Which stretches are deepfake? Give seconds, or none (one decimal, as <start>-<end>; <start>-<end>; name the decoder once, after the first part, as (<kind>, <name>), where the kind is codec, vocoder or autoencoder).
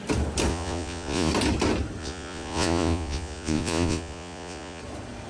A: 0.5-1.3 (vocoder, Vocos); 2.0-4.8